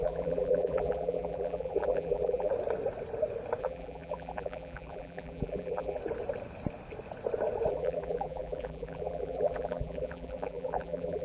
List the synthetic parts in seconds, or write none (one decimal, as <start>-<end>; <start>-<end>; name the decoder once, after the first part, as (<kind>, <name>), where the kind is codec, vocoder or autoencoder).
0.0-2.5 (vocoder, BigVGAN v2); 3.6-6.0; 7.7-11.2

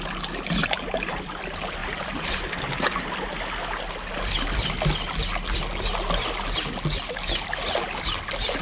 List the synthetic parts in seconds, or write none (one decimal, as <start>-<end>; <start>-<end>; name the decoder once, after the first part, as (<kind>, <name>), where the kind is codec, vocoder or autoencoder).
0.6-1.2 (vocoder, BigVGAN v2); 1.8-3.0

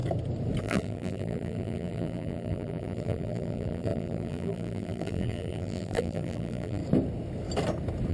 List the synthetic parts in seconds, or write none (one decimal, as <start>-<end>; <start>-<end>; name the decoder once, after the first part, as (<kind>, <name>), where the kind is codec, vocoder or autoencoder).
0.6-6.8 (vocoder, BigVGAN v2)

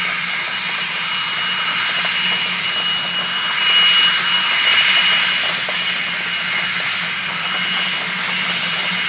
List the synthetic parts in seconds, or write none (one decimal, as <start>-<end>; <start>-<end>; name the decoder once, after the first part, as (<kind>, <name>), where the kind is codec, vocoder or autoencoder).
4.7-5.3 (vocoder, BigVGAN v2)

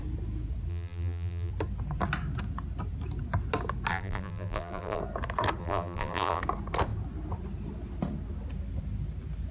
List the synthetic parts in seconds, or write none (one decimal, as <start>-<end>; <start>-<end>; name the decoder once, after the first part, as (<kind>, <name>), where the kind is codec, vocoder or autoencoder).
0.7-1.5 (vocoder, BigVGAN v2); 3.9-5.0; 5.6-6.4

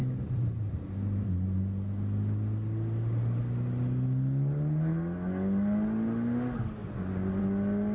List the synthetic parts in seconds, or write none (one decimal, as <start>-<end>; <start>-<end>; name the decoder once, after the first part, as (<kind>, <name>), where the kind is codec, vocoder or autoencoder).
0.0-1.3 (vocoder, BigVGAN v2)